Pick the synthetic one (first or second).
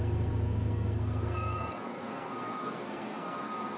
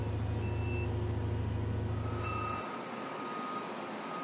first